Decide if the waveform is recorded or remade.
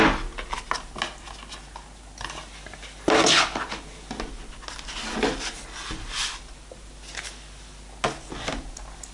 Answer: recorded